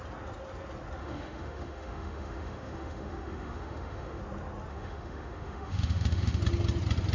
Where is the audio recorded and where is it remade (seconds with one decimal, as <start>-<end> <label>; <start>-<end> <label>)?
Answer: 0.0-1.0 recorded; 1.0-4.2 remade; 4.2-4.7 recorded; 4.7-6.4 remade; 6.4-7.1 recorded